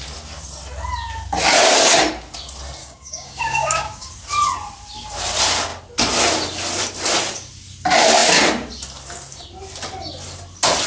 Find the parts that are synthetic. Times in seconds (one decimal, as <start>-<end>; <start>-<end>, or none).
2.8-4.1

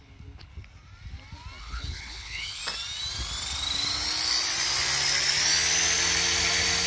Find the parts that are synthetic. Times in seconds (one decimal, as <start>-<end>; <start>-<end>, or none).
0.0-0.5; 1.6-2.6

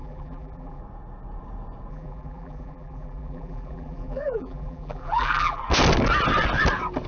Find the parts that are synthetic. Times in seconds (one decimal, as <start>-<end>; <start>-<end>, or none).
0.0-0.8; 1.9-5.6

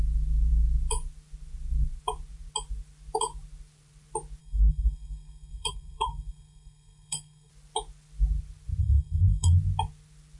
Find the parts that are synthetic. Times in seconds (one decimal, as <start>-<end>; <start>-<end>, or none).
4.4-7.5; 8.8-9.5

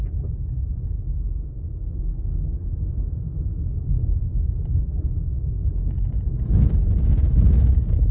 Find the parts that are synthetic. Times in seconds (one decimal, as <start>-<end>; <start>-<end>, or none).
1.1-8.1

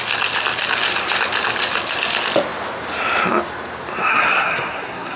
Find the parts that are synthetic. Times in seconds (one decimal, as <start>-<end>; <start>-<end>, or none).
4.0-5.2

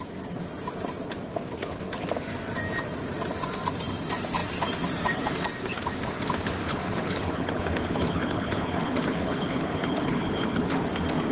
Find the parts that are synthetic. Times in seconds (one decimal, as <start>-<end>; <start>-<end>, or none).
6.7-10.7